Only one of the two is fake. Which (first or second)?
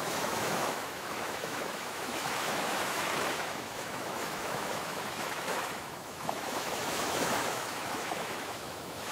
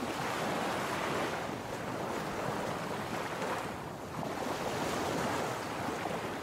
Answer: first